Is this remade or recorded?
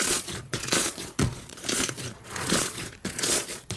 remade